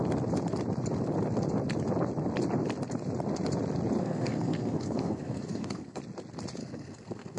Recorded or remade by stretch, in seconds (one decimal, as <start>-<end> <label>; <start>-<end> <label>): 0.0-4.0 recorded; 4.0-6.0 remade; 6.0-6.6 recorded; 6.6-7.4 remade